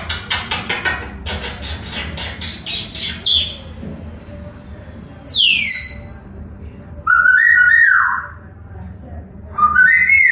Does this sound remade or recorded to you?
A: recorded